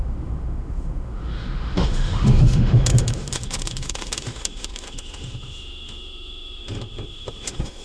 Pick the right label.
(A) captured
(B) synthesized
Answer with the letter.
B